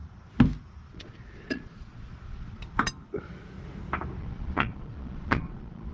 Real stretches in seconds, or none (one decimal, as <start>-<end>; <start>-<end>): 0.0-0.9; 2.6-4.2